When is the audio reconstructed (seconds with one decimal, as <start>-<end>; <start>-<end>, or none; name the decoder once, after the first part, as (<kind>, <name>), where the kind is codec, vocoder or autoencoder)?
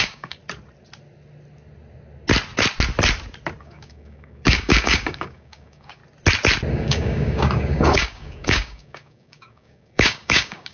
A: 0.0-0.4 (codec, DAC); 3.6-6.0; 6.7-10.7